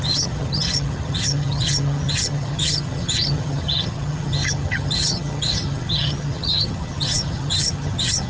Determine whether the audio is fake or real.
fake